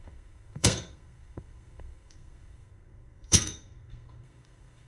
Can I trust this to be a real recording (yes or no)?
no